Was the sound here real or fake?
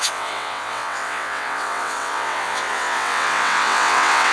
fake